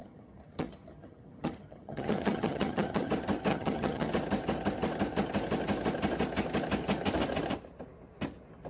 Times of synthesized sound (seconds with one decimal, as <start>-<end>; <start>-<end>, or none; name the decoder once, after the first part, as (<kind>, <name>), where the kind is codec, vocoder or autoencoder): 0.0-3.1 (vocoder, HiFi-GAN); 3.5-4.1